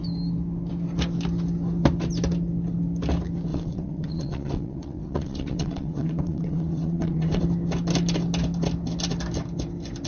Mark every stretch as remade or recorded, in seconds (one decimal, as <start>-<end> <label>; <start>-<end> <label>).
0.0-3.5 recorded; 3.5-7.4 remade; 7.4-10.1 recorded